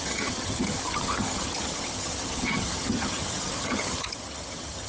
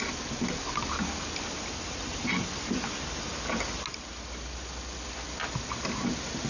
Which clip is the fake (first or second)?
first